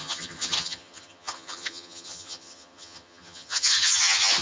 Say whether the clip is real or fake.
fake